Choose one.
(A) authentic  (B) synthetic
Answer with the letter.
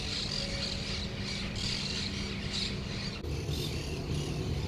A